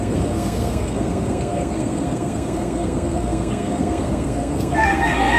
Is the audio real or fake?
fake